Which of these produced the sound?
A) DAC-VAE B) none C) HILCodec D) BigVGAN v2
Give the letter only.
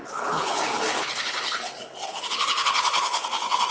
C